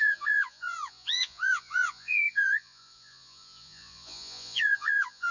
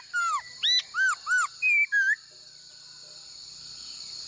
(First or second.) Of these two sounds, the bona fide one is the second